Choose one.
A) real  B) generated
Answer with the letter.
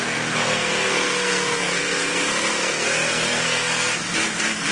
B